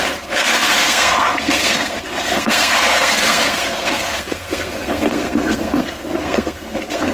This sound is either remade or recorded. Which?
remade